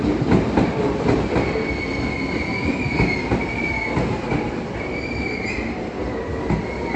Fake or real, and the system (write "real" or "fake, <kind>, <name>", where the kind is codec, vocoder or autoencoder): real